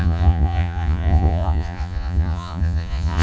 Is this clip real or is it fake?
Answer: fake